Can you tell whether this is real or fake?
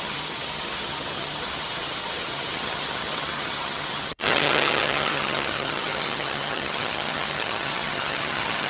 fake